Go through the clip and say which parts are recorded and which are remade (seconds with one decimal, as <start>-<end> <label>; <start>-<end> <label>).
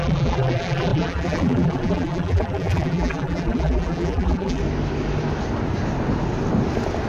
0.0-4.6 remade; 4.6-7.1 recorded